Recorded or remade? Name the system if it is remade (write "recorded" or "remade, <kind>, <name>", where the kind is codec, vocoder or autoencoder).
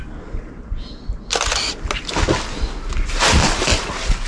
recorded